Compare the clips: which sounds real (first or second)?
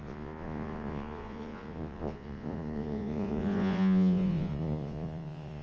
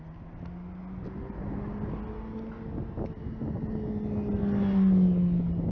second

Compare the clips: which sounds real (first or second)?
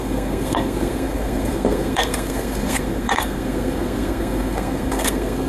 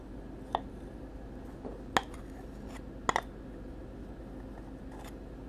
second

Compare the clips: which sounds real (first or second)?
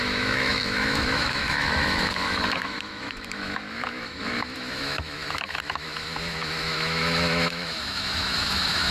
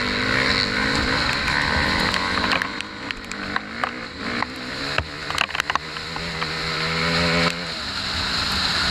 second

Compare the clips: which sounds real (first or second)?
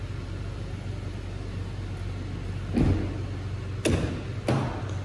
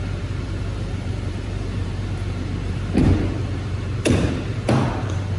first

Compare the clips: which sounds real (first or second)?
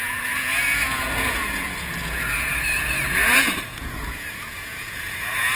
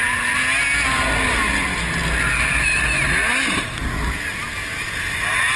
second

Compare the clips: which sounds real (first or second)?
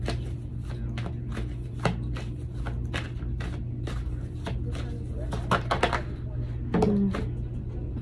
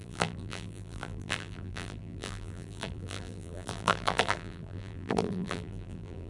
first